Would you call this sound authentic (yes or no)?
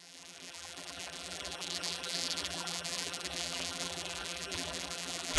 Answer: no